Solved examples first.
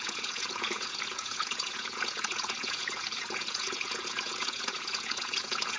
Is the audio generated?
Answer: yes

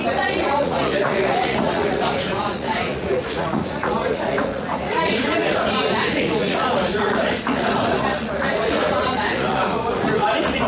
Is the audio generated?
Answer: yes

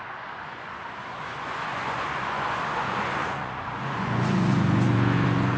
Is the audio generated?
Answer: yes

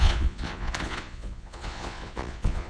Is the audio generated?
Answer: yes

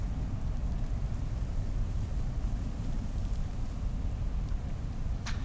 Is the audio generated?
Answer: no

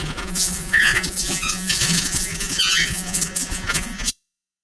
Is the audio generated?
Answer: yes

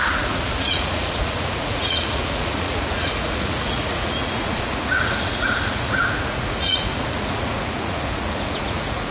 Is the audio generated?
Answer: yes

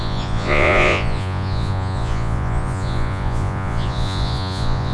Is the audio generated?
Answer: yes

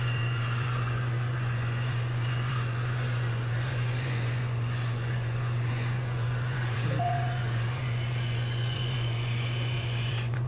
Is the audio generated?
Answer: yes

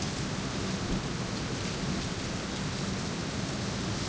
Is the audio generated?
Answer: no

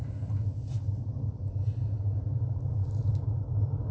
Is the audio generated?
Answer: no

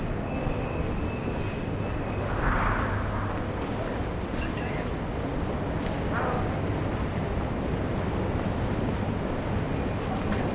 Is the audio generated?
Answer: no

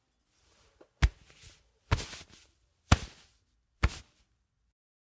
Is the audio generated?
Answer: no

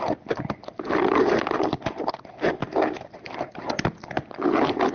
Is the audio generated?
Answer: no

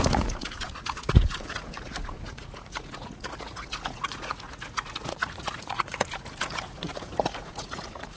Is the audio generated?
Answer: yes